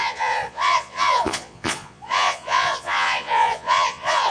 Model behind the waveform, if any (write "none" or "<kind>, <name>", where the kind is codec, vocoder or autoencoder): vocoder, Vocos